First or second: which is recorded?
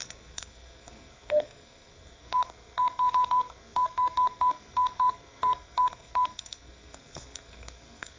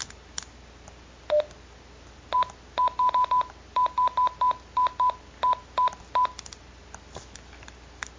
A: second